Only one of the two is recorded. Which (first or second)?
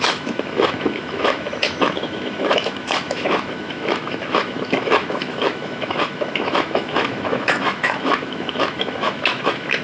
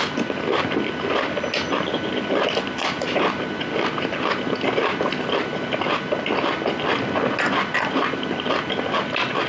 second